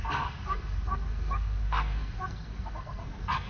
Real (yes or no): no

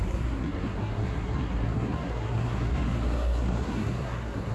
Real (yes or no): no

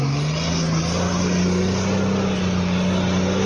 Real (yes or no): yes